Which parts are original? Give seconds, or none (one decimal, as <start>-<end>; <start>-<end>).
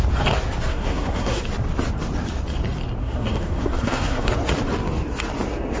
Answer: 0.0-0.7; 1.4-3.0; 4.3-5.8